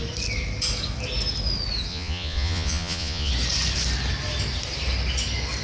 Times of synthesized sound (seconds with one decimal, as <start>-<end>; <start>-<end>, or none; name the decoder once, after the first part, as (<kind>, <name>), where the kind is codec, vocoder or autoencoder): 1.9-3.3 (vocoder, Vocos)